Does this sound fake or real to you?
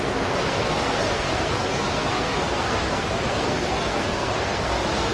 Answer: fake